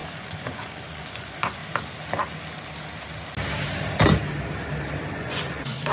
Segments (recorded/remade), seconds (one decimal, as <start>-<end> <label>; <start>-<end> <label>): 0.0-1.6 remade; 1.6-5.1 recorded; 5.1-5.9 remade